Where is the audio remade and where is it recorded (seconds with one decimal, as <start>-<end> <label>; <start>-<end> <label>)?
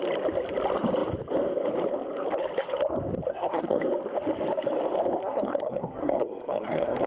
0.0-3.3 recorded; 3.3-3.8 remade; 3.8-5.2 recorded; 5.2-7.1 remade